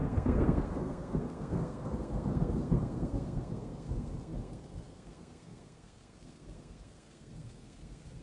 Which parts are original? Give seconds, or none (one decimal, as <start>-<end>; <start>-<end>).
none